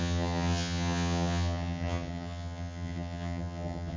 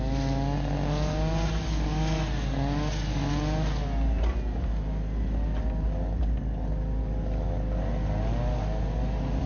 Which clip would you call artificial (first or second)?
first